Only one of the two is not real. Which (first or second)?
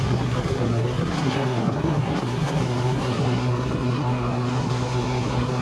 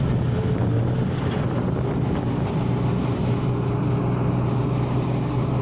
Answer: first